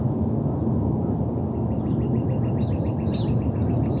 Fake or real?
real